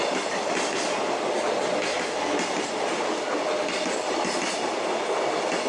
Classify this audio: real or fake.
real